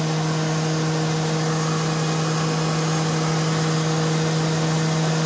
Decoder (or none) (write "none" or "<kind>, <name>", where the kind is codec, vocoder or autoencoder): none